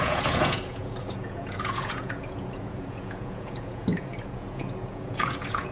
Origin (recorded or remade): remade